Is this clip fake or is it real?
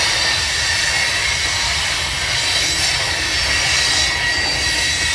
real